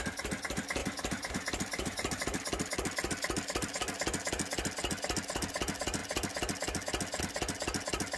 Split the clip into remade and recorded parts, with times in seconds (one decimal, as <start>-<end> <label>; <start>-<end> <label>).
0.0-0.8 recorded; 0.8-2.2 remade; 2.2-8.2 recorded